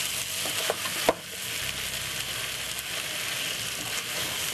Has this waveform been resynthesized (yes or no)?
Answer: no